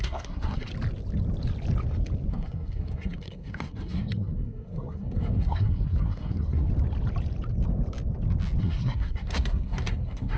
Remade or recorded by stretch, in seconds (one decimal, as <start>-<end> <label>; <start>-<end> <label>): 0.0-0.7 remade; 0.7-2.3 recorded; 2.3-6.7 remade; 6.7-8.6 recorded; 8.6-10.4 remade